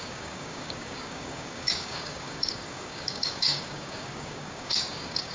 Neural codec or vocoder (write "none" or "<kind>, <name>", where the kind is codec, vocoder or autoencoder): codec, DAC